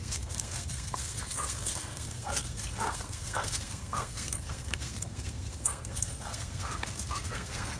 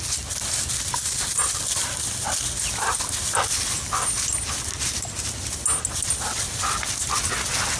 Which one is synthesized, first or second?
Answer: first